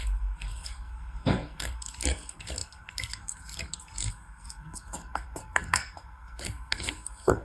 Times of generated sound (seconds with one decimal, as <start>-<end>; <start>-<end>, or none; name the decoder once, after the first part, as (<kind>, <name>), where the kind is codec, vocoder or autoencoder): 0.0-7.4 (codec, SNAC)